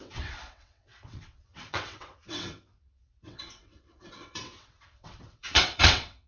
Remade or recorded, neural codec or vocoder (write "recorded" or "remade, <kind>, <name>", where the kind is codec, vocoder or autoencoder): remade, vocoder, WaveNeXt